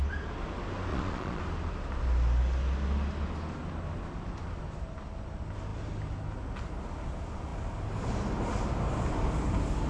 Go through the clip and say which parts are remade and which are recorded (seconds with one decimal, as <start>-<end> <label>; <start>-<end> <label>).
0.0-0.9 recorded; 0.9-1.4 remade; 1.4-9.9 recorded